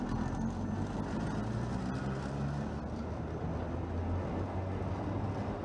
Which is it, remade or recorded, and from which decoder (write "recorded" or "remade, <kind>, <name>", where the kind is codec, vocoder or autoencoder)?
recorded